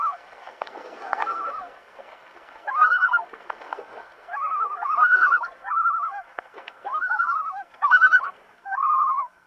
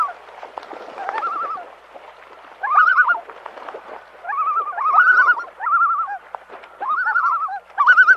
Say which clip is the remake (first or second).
first